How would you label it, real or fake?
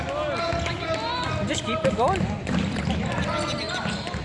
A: real